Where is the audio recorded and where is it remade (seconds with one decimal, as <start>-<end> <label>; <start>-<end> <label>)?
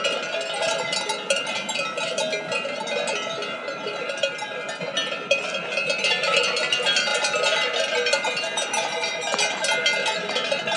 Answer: 0.0-10.8 recorded